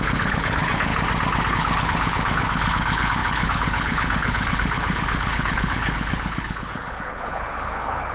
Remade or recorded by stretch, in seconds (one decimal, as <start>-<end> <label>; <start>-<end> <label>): 0.0-0.9 remade; 0.9-1.5 recorded; 1.5-8.1 remade